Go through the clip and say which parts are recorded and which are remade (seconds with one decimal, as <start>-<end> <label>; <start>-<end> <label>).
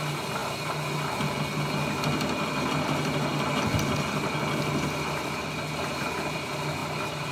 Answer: 0.0-7.3 recorded